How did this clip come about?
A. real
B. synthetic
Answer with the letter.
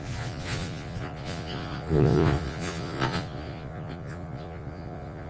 B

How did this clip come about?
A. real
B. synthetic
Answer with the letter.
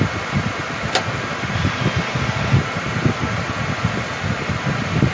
A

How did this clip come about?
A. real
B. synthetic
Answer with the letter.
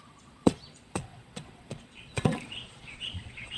B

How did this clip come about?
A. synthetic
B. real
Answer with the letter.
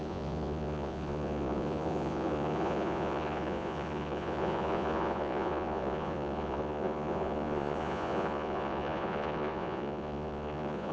A